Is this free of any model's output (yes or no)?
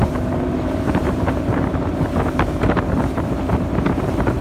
no